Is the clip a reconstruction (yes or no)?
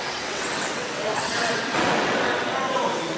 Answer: yes